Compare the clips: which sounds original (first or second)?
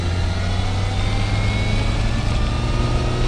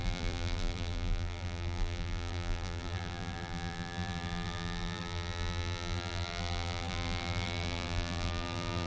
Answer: first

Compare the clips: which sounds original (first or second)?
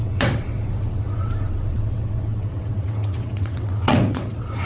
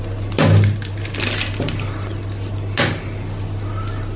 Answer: second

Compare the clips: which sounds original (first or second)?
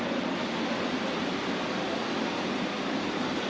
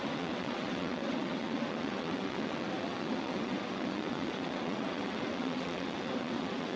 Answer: first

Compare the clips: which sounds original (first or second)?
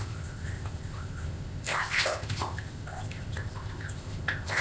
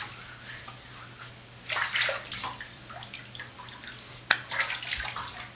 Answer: second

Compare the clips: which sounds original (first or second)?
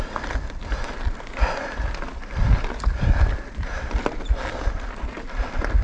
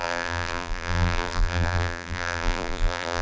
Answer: first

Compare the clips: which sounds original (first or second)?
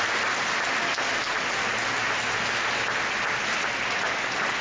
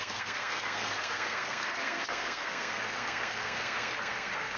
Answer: first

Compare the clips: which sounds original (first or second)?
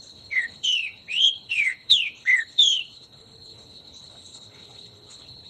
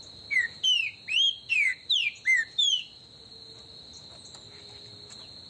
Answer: second